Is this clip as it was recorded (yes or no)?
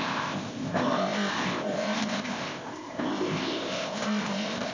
no